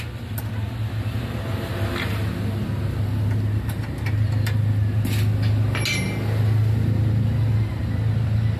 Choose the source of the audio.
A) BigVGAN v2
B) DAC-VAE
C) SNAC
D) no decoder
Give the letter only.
D